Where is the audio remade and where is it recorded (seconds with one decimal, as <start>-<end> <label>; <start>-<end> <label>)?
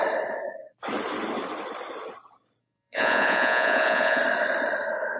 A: 0.0-2.6 recorded; 2.6-4.2 remade; 4.2-5.2 recorded